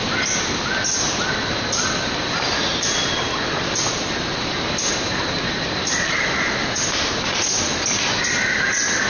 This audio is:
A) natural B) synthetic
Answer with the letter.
A